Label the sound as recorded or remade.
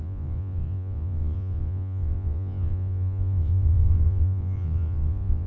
remade